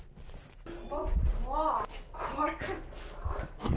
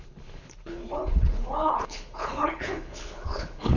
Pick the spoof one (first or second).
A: second